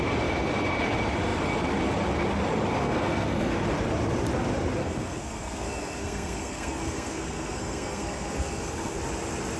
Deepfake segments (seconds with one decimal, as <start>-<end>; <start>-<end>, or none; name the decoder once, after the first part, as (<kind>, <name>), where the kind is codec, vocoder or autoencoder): 2.8-3.5 (codec, SNAC); 4.8-9.0